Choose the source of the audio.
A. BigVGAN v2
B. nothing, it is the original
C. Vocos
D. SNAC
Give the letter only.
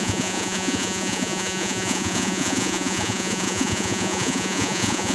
C